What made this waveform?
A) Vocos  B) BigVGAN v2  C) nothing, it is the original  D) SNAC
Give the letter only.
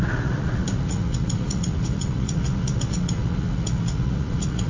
A